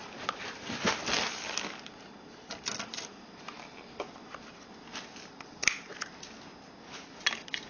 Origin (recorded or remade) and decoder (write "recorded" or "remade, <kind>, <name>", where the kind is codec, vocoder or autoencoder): recorded